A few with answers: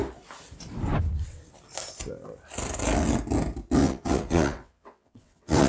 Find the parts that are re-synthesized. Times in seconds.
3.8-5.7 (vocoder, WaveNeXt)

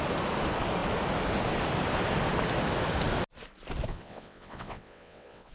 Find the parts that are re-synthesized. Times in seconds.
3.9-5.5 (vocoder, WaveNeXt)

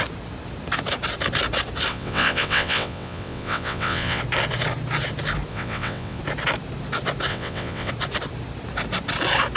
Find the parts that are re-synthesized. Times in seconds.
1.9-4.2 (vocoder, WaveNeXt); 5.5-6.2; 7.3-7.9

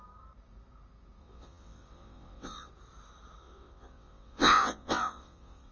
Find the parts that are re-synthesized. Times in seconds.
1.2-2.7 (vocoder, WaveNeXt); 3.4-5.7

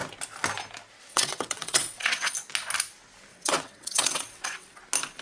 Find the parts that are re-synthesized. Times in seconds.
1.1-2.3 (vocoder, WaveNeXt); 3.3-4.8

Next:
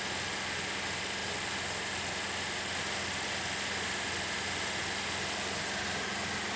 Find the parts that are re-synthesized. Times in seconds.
none